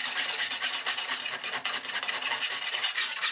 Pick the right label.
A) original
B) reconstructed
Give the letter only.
A